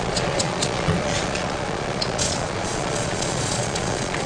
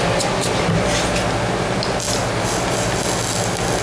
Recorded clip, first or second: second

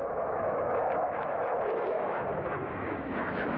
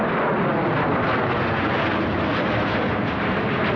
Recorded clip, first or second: second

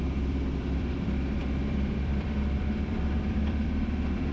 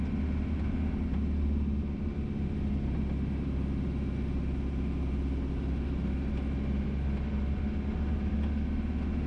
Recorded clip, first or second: second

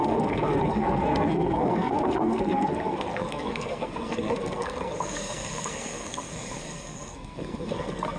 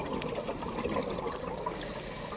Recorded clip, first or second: second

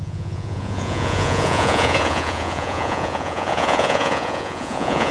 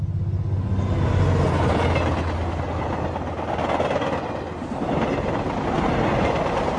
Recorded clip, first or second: second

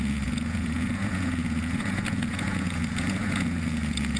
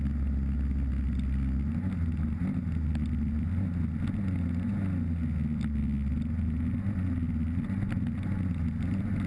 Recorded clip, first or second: second